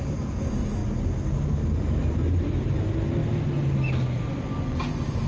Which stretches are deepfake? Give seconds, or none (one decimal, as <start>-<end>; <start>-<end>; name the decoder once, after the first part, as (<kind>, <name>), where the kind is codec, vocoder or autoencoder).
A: none